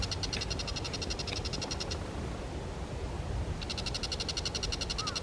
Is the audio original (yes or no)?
yes